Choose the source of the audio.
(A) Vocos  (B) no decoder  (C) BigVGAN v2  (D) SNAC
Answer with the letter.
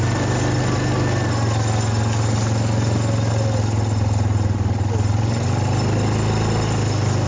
B